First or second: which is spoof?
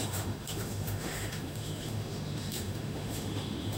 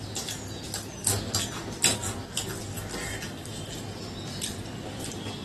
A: first